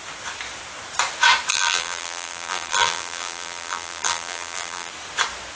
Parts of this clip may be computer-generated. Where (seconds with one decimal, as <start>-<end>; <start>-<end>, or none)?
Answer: 1.5-4.9